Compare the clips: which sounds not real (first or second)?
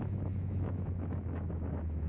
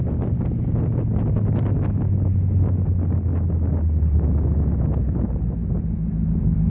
first